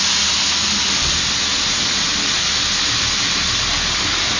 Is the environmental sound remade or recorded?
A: recorded